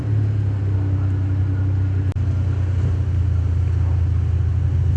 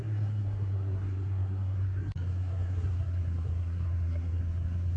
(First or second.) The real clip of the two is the first